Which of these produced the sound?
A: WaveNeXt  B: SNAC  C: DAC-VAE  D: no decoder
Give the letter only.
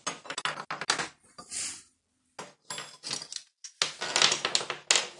D